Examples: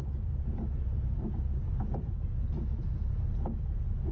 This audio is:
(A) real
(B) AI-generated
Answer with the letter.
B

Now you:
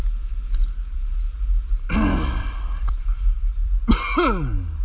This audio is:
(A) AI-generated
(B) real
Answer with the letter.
B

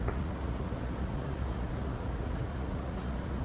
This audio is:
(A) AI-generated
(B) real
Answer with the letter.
A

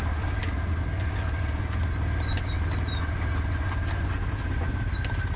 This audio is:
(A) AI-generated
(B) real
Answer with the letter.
B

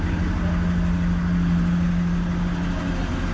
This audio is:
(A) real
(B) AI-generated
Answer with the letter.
A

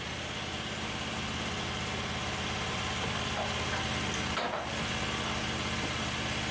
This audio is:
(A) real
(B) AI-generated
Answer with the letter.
A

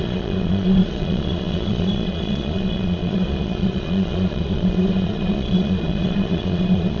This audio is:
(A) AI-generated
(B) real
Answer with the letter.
A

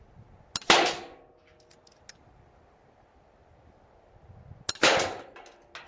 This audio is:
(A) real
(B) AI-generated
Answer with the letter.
A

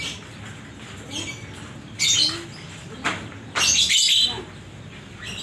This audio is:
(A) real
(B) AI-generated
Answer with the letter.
A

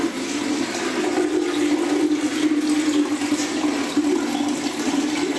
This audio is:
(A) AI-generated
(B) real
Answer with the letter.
B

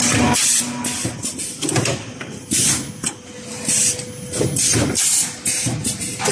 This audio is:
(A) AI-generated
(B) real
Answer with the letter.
B